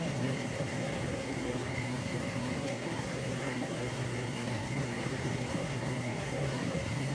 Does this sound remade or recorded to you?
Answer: remade